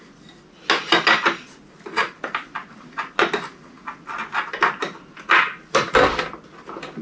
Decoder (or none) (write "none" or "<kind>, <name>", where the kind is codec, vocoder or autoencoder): none